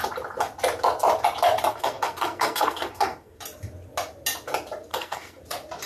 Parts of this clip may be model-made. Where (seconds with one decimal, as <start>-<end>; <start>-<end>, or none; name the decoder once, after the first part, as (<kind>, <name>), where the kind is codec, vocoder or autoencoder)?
1.7-3.4 (codec, SNAC); 4.9-5.4

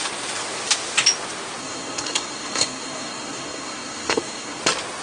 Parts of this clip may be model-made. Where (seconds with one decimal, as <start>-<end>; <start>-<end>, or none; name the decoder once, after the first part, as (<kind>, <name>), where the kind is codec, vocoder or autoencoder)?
1.6-4.6 (codec, SNAC)

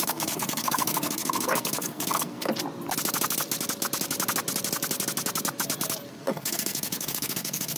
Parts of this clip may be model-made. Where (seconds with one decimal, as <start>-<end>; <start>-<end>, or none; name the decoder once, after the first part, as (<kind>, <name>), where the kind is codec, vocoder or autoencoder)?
0.0-2.5 (codec, SNAC); 6.1-7.8

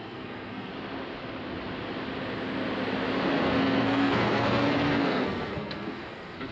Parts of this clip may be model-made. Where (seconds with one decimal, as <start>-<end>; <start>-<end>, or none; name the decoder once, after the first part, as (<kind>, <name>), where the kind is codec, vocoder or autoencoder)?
0.0-0.7 (codec, SNAC); 3.4-6.5